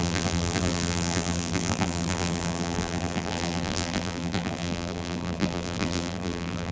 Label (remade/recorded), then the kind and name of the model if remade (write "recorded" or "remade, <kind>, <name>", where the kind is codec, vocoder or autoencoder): remade, vocoder, BigVGAN v2